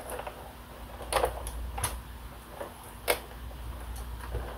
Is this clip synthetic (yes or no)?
no